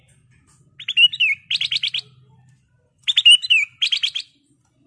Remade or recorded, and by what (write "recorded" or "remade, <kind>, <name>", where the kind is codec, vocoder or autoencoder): recorded